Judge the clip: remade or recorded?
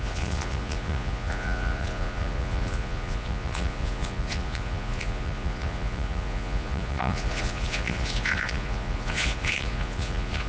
remade